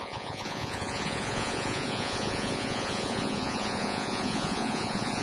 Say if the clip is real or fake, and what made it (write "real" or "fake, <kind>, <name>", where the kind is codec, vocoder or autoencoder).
fake, vocoder, Vocos